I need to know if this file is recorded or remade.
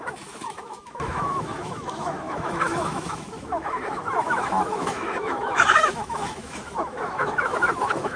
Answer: remade